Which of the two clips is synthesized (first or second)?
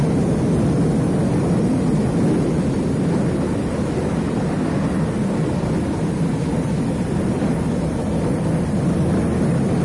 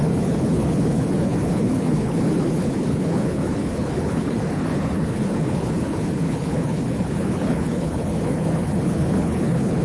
second